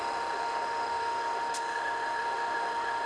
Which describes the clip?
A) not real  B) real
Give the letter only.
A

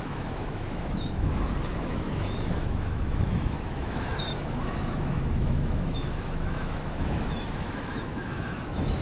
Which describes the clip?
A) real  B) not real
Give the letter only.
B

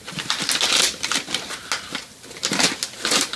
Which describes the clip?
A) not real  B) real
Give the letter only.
B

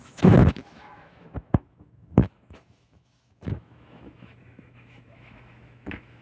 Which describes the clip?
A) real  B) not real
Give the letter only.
B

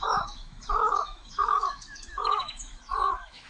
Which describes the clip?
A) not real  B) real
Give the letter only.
A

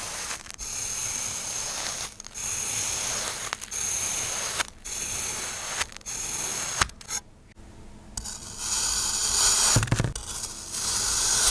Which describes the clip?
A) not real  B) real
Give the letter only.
B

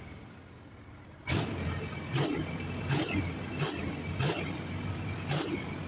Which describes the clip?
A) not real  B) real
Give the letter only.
B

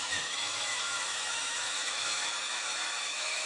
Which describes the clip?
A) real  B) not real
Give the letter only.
B